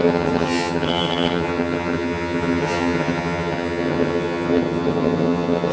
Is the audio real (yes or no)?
no